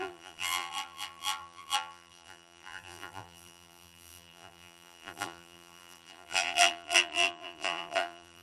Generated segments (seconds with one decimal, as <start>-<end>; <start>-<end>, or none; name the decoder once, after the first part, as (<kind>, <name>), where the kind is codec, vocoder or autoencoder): 0.0-8.4 (vocoder, BigVGAN v2)

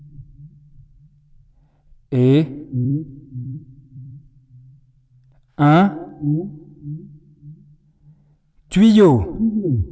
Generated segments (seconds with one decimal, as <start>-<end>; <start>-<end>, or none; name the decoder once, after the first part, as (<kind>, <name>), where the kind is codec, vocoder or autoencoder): 1.9-4.3 (vocoder, BigVGAN v2)

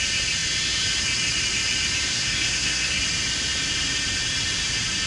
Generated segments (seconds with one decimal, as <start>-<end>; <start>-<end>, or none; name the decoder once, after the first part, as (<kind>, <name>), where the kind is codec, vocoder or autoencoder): 2.1-3.0 (codec, SNAC)

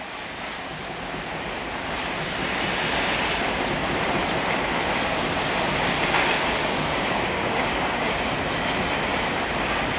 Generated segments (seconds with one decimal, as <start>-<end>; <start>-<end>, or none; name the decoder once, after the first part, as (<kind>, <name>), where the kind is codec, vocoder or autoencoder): 6.6-8.1 (codec, DAC)

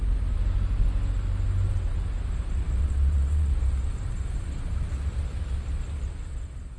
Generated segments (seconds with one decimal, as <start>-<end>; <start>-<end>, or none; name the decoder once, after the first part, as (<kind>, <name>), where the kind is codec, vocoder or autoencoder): 2.8-3.5 (vocoder, WaveNeXt)

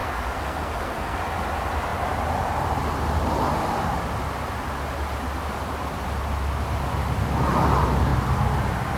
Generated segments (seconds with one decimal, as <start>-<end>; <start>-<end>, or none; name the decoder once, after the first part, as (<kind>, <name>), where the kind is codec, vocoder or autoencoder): 0.0-1.2 (codec, SNAC)

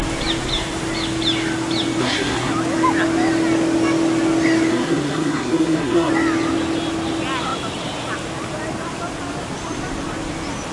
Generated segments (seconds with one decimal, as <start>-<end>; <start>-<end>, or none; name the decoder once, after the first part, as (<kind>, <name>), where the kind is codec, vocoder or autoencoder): 2.0-2.5 (codec, SNAC); 4.7-6.1